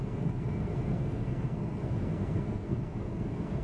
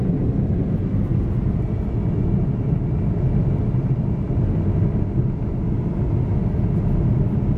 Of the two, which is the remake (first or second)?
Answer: first